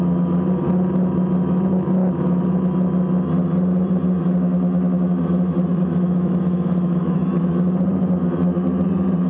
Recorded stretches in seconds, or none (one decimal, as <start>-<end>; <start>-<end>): 0.0-5.7; 7.3-9.3